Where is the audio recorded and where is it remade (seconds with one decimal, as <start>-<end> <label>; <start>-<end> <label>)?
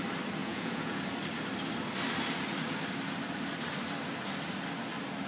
0.0-0.4 recorded; 0.4-1.0 remade; 1.0-5.3 recorded